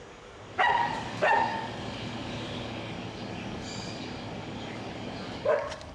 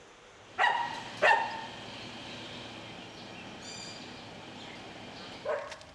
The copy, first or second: first